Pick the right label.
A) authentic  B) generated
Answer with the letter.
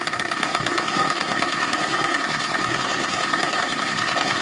B